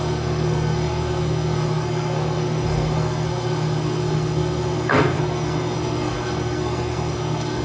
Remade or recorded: remade